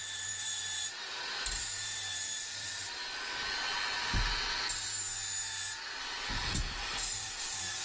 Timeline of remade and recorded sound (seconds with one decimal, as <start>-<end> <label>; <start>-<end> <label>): 0.0-3.0 remade; 3.0-7.2 recorded; 7.2-7.8 remade